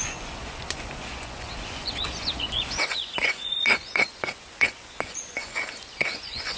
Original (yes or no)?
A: no